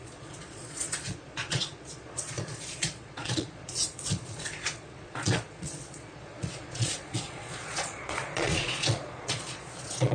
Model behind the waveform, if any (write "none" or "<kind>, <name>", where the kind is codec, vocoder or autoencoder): vocoder, Vocos